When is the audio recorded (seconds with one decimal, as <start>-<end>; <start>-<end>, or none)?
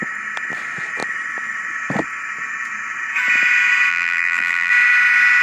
0.0-3.9; 4.7-5.4